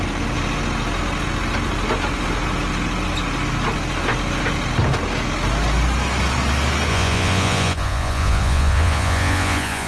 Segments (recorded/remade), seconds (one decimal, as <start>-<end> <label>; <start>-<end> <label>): 0.0-6.9 recorded; 6.9-9.9 remade